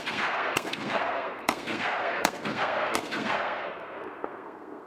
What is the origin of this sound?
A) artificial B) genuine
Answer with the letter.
A